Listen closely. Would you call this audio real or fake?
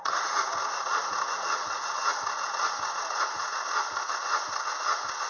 fake